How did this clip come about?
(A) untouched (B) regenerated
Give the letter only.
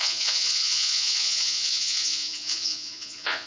B